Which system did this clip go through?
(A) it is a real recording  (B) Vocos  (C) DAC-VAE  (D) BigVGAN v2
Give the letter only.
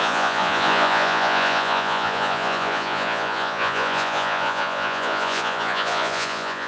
B